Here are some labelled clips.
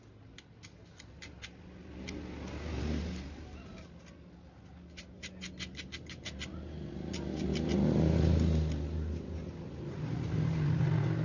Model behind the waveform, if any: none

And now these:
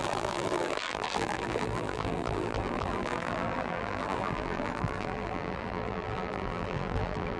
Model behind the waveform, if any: vocoder, BigVGAN v2